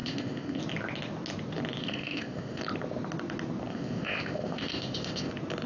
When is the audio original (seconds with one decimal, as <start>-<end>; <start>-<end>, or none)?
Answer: 0.6-1.8; 2.6-3.7; 5.3-5.7